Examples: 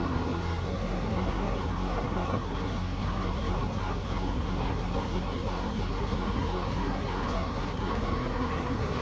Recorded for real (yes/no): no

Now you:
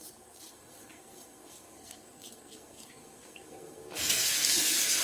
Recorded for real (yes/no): no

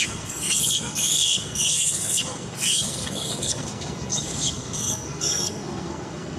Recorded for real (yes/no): no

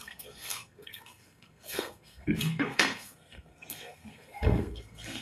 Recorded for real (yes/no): no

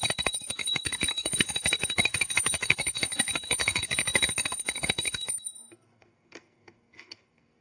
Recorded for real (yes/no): no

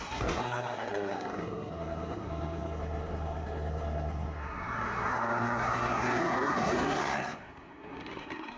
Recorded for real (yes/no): no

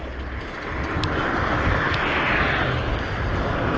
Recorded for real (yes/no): yes